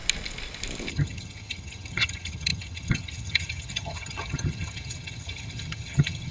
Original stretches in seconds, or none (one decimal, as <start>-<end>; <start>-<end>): 0.0-0.9